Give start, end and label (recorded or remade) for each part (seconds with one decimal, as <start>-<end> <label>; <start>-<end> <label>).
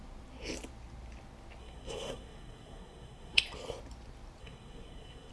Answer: 0.0-1.6 recorded; 1.6-3.4 remade; 3.4-4.4 recorded; 4.4-5.3 remade